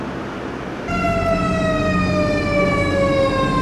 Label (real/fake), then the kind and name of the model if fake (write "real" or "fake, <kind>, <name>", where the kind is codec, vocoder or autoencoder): real